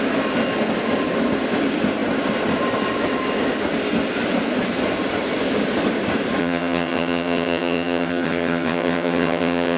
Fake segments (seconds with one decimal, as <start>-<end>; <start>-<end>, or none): 6.4-9.8